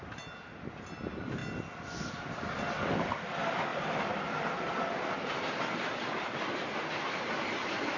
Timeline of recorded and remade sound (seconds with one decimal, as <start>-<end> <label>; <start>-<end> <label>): 0.0-8.0 recorded